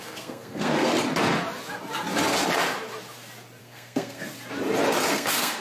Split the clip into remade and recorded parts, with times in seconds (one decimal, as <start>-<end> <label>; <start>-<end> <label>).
0.0-0.9 remade; 0.9-3.6 recorded; 3.6-4.3 remade; 4.3-5.1 recorded; 5.1-5.6 remade